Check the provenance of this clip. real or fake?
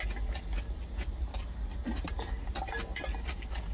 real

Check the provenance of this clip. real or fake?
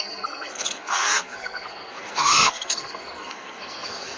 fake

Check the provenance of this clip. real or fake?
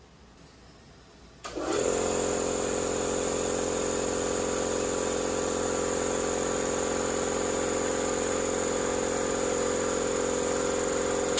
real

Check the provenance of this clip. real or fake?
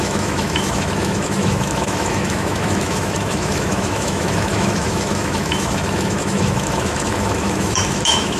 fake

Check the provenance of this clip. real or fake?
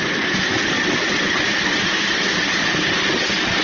real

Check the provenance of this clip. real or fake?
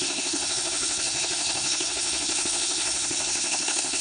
fake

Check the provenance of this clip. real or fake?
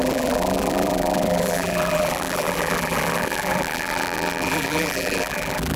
fake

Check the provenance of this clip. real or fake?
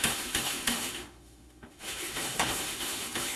fake